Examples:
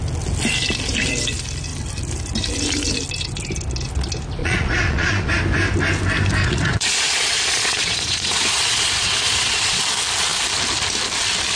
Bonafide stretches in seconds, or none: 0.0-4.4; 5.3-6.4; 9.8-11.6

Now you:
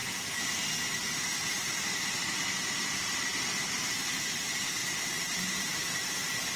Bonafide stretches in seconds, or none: 0.0-2.9

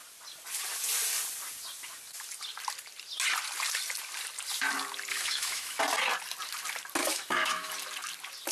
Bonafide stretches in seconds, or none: 0.0-5.1; 5.8-7.0; 7.7-8.5

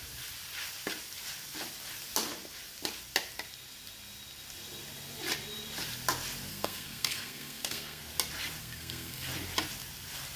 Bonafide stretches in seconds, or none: 0.0-6.5; 8.0-8.6; 9.3-10.4

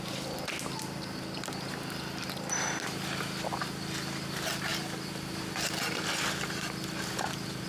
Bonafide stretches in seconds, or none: 0.0-4.7; 5.4-7.7